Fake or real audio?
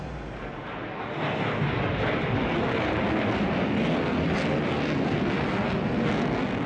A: real